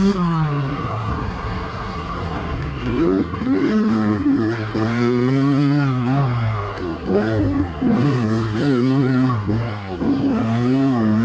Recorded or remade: remade